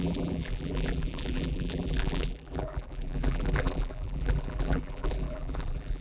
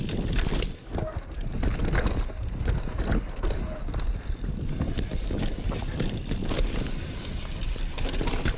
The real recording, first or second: second